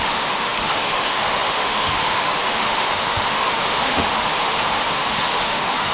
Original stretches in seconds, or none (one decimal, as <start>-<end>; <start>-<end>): none